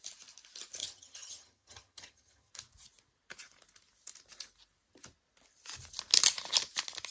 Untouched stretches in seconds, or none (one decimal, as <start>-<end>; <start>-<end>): 0.0-0.8; 2.5-7.1